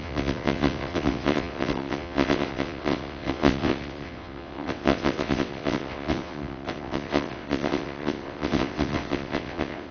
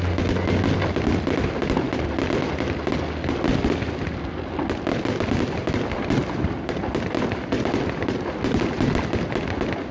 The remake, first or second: first